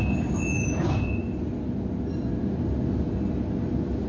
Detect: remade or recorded recorded